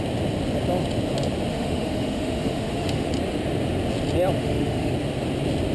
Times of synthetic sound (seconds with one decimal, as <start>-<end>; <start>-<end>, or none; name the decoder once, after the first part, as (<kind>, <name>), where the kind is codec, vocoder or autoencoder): 1.5-3.1 (autoencoder, DAC-VAE); 4.4-4.9